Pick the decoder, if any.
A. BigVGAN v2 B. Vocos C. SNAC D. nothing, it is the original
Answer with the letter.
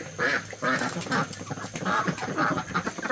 D